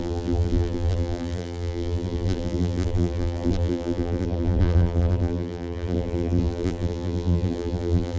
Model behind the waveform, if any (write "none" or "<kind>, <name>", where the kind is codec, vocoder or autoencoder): vocoder, BigVGAN v2